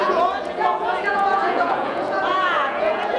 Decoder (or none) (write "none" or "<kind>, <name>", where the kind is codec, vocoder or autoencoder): vocoder, Vocos